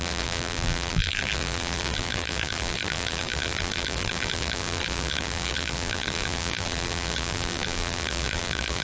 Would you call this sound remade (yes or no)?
yes